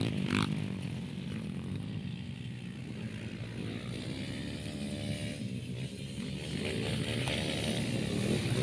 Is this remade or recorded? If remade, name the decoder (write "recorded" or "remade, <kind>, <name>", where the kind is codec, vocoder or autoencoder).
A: recorded